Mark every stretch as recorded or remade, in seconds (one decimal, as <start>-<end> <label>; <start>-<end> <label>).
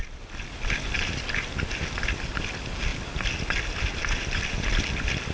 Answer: 0.0-5.3 recorded